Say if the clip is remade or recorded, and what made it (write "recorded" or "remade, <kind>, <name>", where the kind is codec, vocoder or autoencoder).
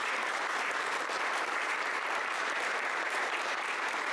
remade, vocoder, BigVGAN v2